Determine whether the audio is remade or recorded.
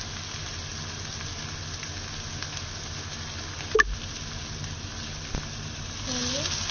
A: recorded